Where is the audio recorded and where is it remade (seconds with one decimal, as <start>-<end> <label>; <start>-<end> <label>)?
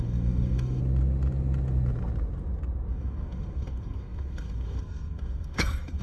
0.0-0.8 remade; 0.8-2.9 recorded; 2.9-6.0 remade